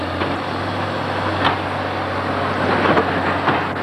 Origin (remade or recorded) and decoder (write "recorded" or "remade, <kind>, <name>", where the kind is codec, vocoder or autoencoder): recorded